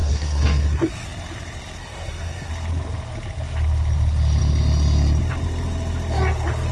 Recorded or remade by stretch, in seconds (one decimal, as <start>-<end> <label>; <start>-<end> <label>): 0.0-0.9 remade; 0.9-1.8 recorded; 1.8-2.5 remade; 2.5-6.7 recorded